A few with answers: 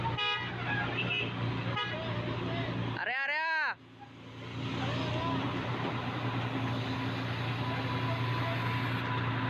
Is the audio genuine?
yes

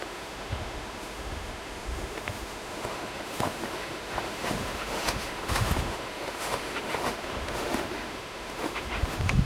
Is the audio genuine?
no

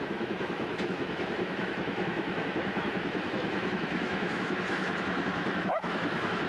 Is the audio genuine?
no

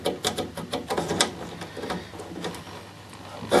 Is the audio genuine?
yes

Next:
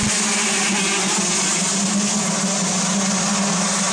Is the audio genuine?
yes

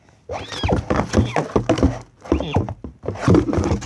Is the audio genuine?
yes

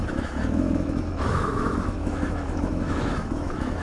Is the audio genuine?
no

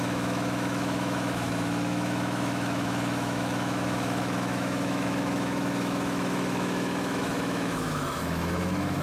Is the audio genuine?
no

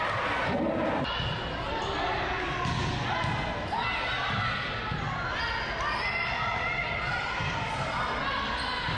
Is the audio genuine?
yes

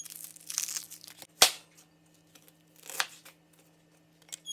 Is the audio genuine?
yes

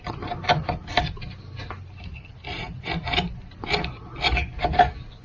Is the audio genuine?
yes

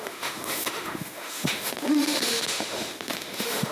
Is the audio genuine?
no